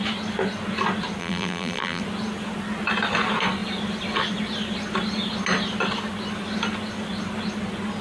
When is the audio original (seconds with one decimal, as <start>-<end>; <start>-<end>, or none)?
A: 0.0-1.2; 2.0-8.0